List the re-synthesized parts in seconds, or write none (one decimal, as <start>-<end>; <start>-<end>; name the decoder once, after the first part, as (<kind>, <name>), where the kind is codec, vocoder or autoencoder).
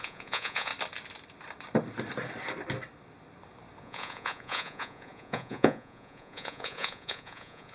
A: 0.0-0.7 (vocoder, Vocos); 3.8-7.7